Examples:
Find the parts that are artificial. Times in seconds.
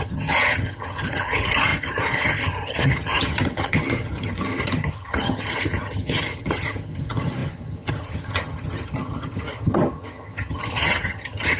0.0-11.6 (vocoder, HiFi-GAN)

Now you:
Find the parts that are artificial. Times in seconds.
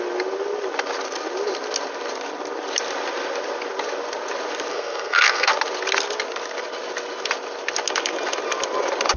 4.7-5.5 (codec, SNAC)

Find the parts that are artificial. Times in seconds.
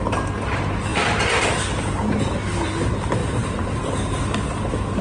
0.9-2.2 (vocoder, BigVGAN v2); 3.2-3.8